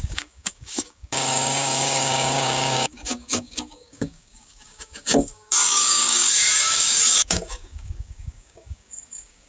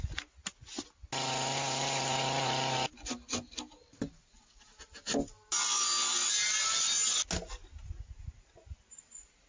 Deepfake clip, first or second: first